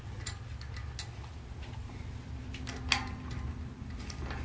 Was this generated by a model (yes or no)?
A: no